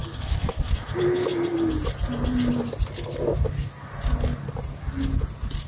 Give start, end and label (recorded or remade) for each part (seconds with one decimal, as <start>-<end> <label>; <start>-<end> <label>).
0.0-5.7 recorded